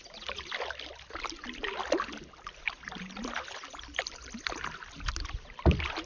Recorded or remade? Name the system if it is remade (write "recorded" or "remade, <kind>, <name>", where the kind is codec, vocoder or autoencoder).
recorded